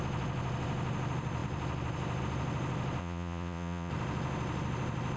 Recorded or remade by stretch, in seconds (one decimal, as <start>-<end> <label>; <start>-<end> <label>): 0.0-3.0 recorded; 3.0-3.9 remade; 3.9-5.2 recorded